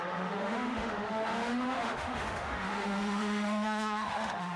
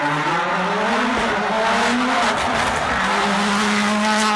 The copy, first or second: first